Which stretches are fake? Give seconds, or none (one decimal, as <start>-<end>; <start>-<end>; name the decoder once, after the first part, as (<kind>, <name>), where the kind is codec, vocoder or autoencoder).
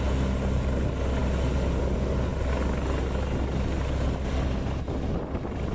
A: none